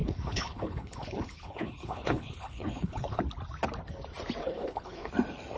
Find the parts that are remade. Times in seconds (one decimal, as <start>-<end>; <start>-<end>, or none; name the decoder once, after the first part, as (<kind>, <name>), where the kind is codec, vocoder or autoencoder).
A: 0.0-3.2 (codec, HILCodec); 4.4-5.1